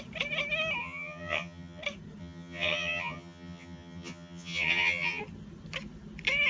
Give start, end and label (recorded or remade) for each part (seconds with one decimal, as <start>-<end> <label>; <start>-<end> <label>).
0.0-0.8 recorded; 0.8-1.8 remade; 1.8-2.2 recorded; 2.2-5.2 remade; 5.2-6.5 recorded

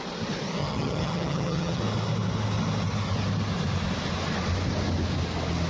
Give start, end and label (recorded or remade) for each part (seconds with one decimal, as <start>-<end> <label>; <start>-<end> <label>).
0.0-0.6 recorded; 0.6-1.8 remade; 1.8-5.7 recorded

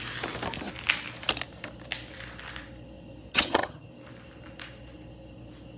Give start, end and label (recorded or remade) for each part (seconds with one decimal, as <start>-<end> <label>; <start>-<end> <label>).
0.0-3.3 recorded; 3.3-3.9 remade; 3.9-5.8 recorded